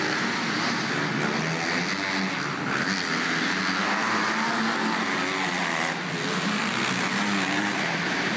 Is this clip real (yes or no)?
yes